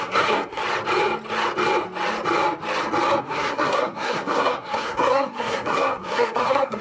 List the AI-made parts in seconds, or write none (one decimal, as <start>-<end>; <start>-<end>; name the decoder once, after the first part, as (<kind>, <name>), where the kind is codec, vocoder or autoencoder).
0.0-0.6 (codec, SNAC); 3.2-6.8